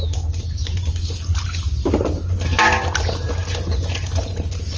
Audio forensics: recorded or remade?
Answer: recorded